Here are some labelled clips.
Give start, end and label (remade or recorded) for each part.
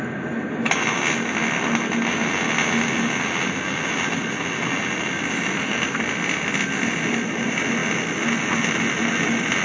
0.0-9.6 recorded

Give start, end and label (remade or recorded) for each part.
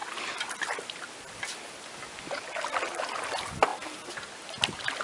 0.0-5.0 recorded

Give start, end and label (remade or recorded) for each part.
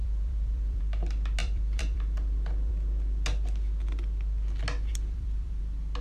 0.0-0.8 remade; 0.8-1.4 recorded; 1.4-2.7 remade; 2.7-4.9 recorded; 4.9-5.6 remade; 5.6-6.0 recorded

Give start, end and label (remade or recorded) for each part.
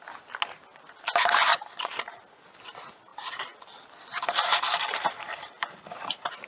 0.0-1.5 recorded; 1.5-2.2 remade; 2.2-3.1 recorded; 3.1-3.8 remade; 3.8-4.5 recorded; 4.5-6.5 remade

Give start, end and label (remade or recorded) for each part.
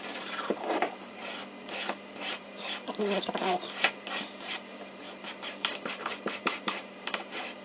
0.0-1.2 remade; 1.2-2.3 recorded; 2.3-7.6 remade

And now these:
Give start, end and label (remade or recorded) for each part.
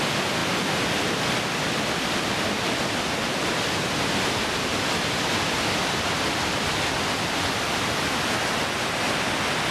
0.0-9.7 recorded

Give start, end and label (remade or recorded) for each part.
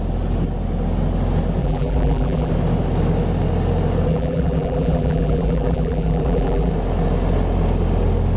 0.0-1.6 recorded; 1.6-2.5 remade; 2.5-4.1 recorded; 4.1-6.7 remade; 6.7-8.4 recorded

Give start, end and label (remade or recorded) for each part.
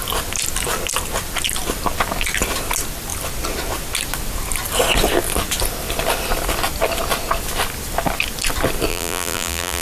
0.0-8.9 recorded; 8.9-9.8 remade